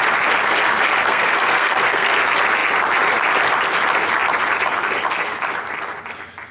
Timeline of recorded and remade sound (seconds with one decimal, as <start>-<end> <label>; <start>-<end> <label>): 0.0-1.0 recorded; 1.0-2.1 remade; 2.1-6.5 recorded